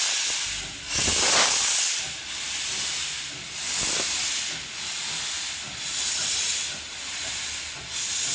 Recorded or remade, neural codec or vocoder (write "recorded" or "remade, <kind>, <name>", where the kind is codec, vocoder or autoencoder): recorded